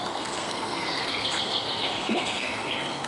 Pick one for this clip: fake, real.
fake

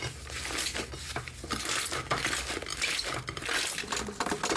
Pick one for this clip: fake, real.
real